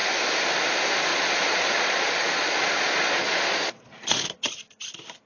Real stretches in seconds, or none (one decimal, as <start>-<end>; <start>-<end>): 0.0-1.1; 4.3-5.3